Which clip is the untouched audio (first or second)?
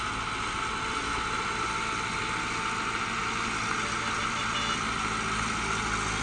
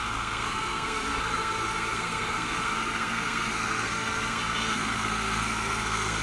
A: first